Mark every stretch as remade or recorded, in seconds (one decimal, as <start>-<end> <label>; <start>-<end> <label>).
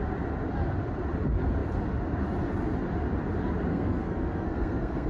0.0-3.7 recorded; 3.7-5.1 remade